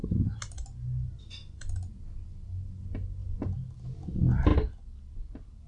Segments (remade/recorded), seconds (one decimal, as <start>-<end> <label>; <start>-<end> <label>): 0.0-5.7 recorded